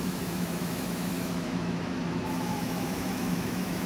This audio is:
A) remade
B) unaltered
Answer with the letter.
A